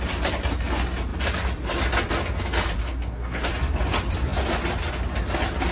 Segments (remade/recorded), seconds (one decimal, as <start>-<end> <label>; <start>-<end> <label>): 0.0-2.8 recorded; 2.8-3.5 remade; 3.5-5.7 recorded